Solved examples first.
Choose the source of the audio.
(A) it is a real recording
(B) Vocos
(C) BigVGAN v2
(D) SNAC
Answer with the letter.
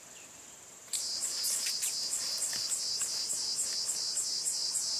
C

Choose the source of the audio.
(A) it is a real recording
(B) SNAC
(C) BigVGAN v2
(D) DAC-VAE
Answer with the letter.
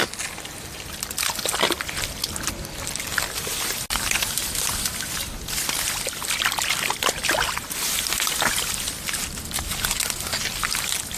A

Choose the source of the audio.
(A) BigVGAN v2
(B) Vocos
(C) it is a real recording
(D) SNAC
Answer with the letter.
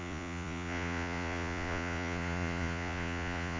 B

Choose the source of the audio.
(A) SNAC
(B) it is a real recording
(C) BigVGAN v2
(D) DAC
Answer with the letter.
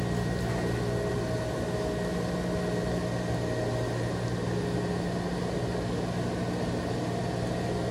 B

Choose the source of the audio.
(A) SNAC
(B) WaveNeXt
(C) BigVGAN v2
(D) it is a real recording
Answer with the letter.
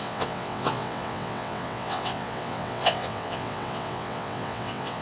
B